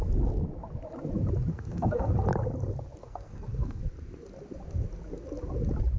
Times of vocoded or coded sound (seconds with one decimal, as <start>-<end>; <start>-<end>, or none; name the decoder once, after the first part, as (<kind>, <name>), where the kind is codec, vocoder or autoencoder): 1.5-2.1 (codec, SNAC); 3.0-3.8